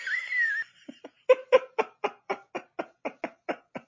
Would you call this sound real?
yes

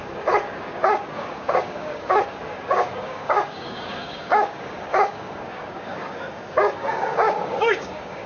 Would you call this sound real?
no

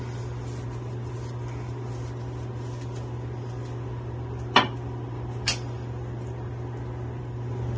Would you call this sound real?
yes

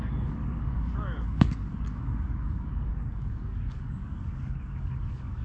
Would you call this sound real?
no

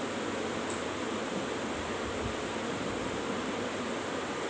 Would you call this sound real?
yes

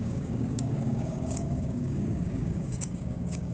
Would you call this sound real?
no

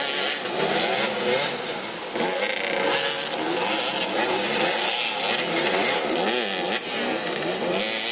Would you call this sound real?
yes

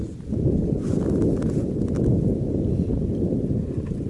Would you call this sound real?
yes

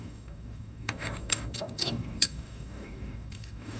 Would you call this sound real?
no